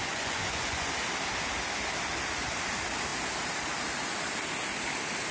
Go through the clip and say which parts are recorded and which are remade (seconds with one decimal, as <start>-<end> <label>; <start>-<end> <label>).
0.0-0.9 remade; 0.9-5.3 recorded